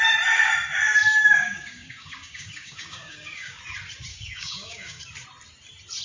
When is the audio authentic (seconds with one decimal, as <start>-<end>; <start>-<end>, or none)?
0.0-1.2; 3.6-4.1; 5.0-6.0